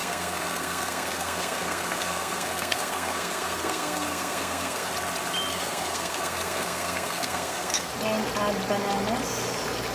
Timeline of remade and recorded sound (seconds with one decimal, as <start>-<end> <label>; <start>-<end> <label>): 0.0-4.9 remade; 4.9-5.5 recorded; 5.5-7.9 remade; 7.9-9.9 recorded